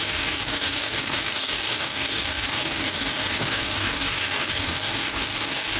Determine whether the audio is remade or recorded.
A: remade